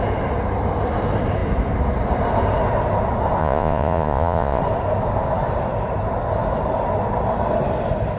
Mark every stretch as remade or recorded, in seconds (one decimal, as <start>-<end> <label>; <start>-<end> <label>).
0.0-3.4 recorded; 3.4-4.6 remade; 4.6-8.2 recorded